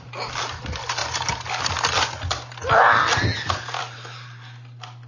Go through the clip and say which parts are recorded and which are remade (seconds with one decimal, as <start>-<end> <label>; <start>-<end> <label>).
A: 0.0-5.1 recorded